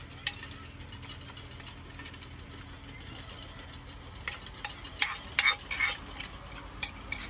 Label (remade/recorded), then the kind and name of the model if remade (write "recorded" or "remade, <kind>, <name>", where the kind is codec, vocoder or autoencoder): recorded